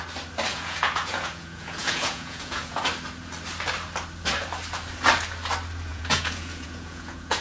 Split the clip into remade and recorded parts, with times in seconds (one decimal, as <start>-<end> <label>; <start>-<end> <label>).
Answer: 0.0-0.5 recorded; 0.5-2.8 remade; 2.8-5.9 recorded; 5.9-7.4 remade